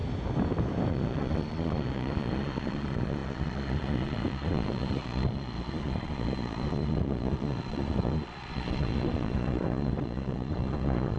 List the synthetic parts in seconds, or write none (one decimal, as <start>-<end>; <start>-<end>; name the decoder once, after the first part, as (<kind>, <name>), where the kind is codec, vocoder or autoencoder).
0.9-11.2 (vocoder, Vocos)